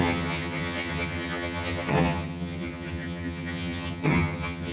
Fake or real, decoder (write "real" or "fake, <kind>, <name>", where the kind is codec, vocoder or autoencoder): fake, vocoder, HiFi-GAN